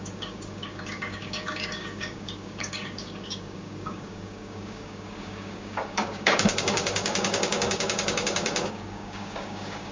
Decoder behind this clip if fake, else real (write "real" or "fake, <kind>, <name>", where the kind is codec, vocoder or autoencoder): fake, codec, DAC